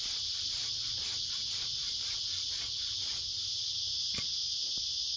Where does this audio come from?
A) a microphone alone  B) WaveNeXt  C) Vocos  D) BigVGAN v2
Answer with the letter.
A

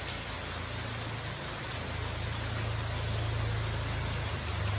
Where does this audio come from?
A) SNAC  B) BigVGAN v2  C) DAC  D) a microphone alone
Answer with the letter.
D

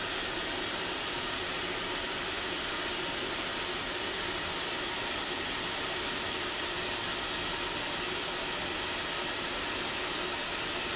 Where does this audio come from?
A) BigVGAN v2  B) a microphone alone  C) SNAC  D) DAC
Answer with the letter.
B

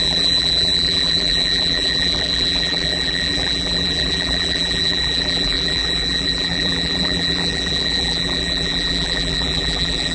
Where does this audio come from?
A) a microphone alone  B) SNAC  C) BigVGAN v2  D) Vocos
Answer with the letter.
C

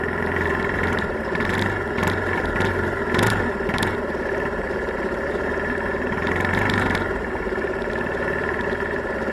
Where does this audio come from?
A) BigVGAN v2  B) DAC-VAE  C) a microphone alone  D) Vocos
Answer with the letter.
A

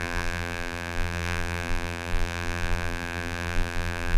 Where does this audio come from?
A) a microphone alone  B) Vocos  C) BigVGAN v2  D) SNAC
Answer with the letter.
C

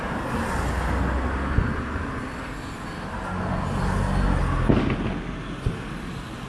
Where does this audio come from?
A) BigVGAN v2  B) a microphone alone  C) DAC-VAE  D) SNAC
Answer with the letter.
B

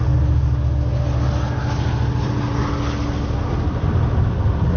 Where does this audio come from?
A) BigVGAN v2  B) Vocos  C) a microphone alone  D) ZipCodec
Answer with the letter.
C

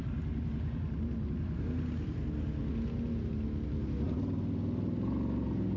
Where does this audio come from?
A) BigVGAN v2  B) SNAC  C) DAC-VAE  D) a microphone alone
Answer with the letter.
D